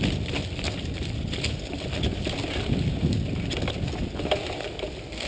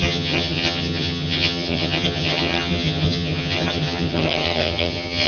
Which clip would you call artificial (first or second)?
second